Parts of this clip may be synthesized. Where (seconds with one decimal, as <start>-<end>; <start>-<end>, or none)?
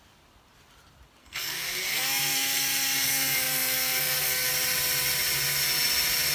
1.2-4.5